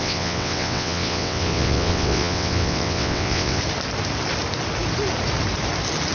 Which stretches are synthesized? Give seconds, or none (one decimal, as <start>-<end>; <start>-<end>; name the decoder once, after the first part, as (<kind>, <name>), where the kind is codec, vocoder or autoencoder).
0.0-3.6 (vocoder, WaveNeXt)